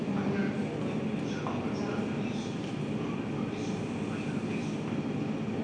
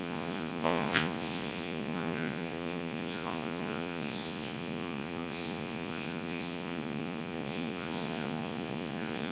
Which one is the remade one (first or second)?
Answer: second